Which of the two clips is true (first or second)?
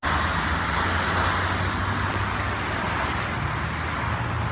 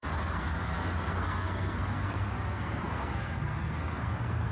first